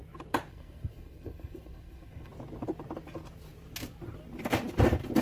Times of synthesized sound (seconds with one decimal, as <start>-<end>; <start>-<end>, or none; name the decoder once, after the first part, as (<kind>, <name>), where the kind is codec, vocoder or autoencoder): 0.5-2.3 (codec, SNAC)